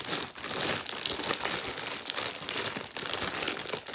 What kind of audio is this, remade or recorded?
recorded